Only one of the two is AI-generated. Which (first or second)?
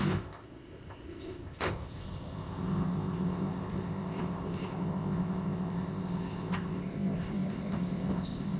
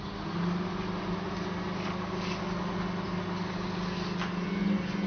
first